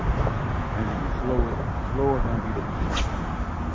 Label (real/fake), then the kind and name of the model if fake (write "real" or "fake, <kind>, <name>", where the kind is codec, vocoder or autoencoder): real